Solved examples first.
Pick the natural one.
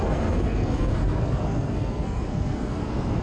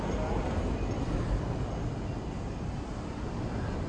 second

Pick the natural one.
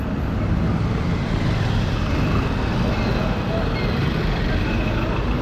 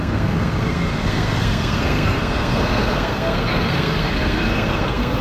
first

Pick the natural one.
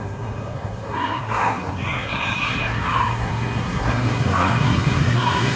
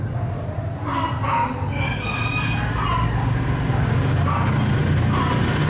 second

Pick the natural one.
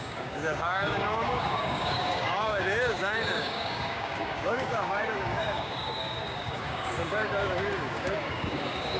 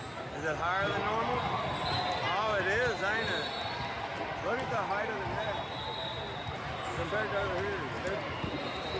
second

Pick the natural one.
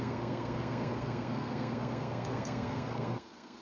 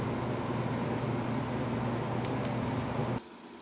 second